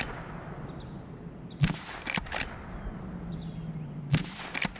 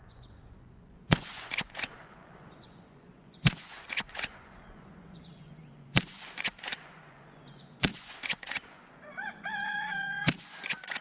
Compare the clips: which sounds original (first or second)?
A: first